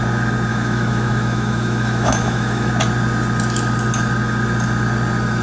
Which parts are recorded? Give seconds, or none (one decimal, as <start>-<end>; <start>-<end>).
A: 0.0-0.5; 2.7-5.4